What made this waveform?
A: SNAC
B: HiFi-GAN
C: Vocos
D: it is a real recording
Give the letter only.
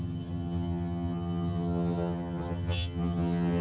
B